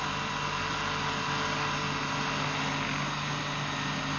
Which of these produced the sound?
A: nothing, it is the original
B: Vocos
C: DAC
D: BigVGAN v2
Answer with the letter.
A